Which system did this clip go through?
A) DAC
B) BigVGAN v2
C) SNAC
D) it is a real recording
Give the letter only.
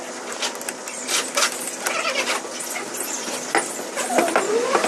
D